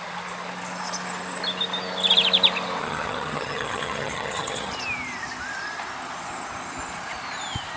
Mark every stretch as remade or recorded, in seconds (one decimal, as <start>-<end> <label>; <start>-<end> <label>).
0.0-2.8 recorded; 2.8-4.7 remade; 4.7-7.8 recorded